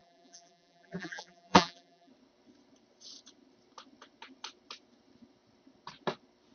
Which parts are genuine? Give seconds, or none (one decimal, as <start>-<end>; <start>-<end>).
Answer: 2.1-6.5